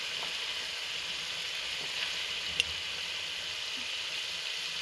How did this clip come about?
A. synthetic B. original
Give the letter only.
B